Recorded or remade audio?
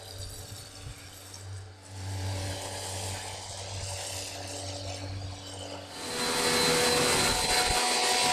recorded